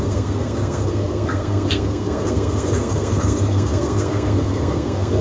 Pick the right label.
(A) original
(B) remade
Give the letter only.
B